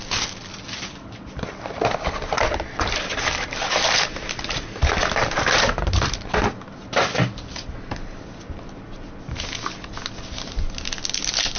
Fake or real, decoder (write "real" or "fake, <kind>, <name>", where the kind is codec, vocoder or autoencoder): real